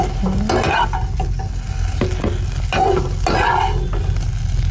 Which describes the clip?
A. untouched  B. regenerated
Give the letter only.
A